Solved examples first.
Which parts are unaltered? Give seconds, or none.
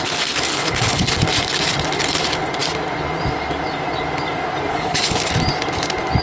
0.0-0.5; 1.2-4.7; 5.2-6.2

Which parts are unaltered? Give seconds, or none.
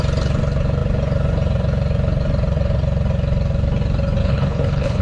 0.0-4.2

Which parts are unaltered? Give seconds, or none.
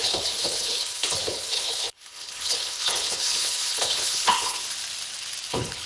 4.6-5.5